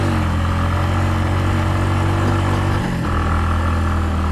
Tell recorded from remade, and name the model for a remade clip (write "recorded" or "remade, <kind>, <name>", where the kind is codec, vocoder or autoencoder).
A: recorded